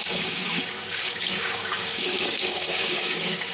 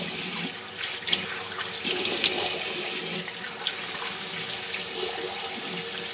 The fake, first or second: first